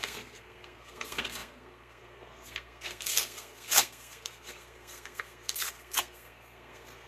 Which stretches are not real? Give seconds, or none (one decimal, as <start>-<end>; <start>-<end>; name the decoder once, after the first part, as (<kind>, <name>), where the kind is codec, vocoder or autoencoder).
0.0-7.1 (codec, SNAC)